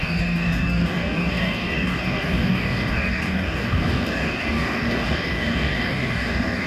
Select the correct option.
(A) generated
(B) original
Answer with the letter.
A